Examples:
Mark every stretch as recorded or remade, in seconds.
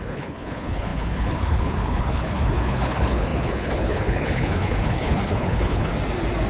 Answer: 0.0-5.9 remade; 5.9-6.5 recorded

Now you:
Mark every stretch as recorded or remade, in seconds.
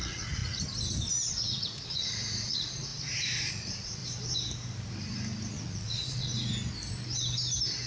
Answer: 0.0-0.4 remade; 0.4-1.3 recorded; 1.3-2.9 remade; 2.9-3.5 recorded; 3.5-4.0 remade; 4.0-5.5 recorded; 5.5-6.3 remade; 6.3-7.9 recorded